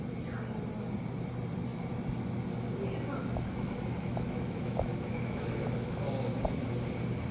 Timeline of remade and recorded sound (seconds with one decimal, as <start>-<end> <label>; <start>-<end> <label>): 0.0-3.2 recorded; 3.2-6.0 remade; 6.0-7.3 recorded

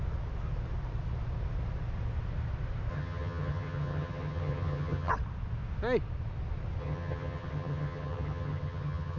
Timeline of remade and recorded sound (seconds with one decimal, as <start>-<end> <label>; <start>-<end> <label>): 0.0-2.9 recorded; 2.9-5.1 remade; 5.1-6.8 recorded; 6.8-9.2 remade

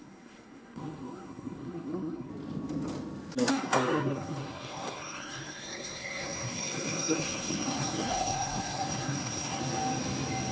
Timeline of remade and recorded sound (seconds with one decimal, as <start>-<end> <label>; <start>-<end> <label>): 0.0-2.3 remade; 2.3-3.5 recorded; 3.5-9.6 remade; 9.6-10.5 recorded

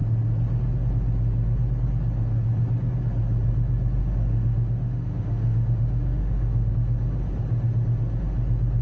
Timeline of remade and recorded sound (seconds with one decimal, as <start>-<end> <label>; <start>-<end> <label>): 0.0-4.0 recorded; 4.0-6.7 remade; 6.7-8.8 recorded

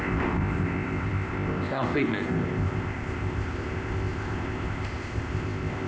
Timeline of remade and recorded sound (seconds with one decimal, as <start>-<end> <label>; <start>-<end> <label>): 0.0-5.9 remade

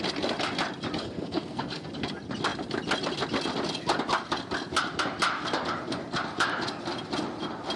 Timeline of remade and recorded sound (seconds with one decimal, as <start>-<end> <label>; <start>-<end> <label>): 0.0-1.0 recorded; 1.0-1.9 remade; 1.9-7.8 recorded

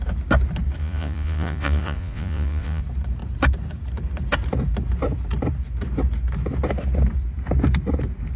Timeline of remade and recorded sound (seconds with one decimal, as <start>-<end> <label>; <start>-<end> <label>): 0.0-0.8 recorded; 0.8-2.8 remade; 2.8-8.4 recorded